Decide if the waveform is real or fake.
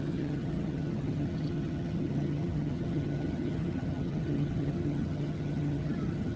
fake